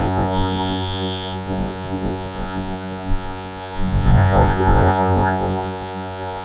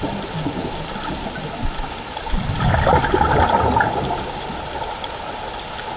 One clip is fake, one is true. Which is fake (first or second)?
first